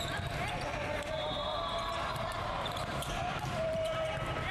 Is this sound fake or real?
fake